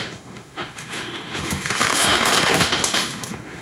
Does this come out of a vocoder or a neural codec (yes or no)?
yes